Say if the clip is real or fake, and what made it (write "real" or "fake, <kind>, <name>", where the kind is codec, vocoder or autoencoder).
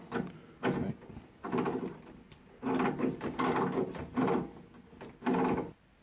real